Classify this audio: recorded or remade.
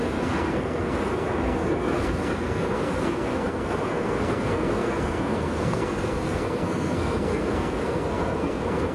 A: remade